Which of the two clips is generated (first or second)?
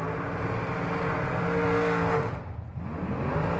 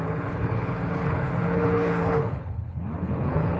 second